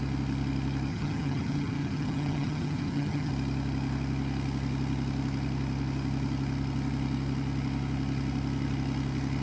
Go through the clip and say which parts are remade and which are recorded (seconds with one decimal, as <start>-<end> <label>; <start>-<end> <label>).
0.0-0.9 recorded; 0.9-3.3 remade; 3.3-9.4 recorded

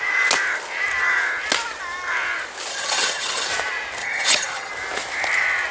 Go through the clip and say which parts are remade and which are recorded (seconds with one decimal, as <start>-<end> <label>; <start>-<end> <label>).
0.0-2.7 recorded; 2.7-3.5 remade; 3.5-4.0 recorded; 4.0-4.7 remade; 4.7-5.7 recorded

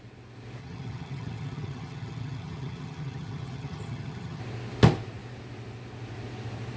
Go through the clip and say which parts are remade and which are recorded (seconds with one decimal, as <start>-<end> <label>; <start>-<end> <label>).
0.0-0.6 recorded; 0.6-4.4 remade; 4.4-6.8 recorded

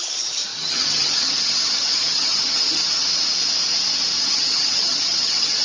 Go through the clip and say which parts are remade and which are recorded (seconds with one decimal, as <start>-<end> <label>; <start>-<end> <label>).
0.0-3.0 remade; 3.0-4.2 recorded; 4.2-5.6 remade

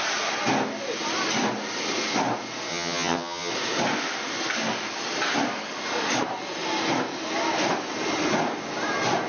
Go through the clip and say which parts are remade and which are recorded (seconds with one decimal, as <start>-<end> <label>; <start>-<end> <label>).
0.0-2.7 recorded; 2.7-3.5 remade; 3.5-9.3 recorded

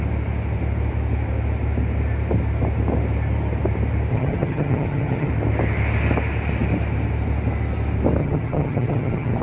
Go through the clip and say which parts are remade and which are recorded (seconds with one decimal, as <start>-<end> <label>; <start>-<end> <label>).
0.0-4.1 recorded; 4.1-5.3 remade; 5.3-8.2 recorded; 8.2-9.4 remade

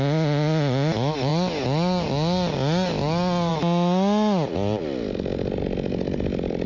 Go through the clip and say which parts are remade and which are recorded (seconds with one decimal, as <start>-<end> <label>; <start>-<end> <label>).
0.0-6.7 recorded

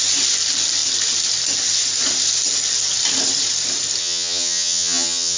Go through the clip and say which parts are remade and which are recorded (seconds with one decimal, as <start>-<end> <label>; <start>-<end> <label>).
0.0-4.0 recorded; 4.0-5.4 remade